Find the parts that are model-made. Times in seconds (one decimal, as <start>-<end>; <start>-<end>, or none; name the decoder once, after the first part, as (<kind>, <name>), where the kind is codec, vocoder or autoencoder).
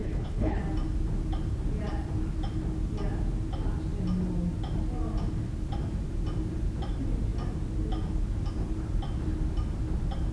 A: 0.0-0.6 (codec, HILCodec)